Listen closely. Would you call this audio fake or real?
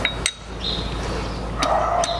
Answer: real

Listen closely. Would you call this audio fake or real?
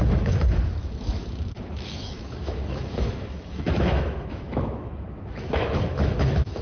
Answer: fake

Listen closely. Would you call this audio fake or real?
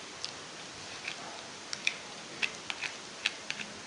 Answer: real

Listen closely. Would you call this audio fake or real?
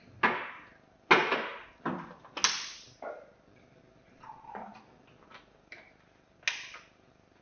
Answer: real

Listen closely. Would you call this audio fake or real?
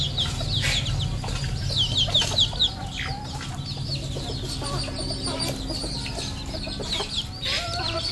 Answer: real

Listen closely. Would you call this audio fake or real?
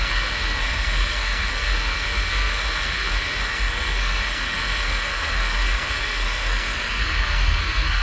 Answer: fake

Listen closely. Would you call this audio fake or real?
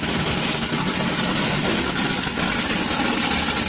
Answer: real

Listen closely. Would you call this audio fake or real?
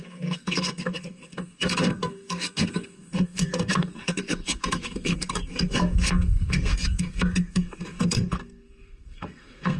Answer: fake